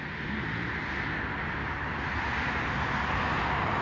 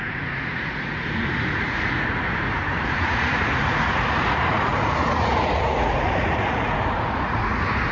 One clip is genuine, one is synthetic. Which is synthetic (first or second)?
second